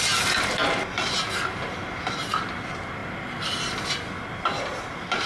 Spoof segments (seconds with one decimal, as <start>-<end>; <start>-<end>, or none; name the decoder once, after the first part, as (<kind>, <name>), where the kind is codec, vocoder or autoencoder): none